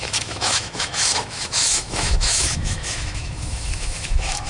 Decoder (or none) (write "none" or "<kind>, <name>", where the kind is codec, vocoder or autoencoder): autoencoder, DAC-VAE